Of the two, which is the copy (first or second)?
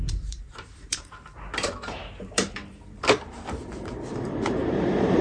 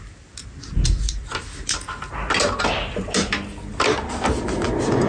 first